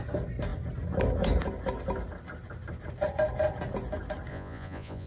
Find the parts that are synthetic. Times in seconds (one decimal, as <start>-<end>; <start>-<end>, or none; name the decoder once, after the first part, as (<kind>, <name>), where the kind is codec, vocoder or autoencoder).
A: 4.3-5.1 (vocoder, Vocos)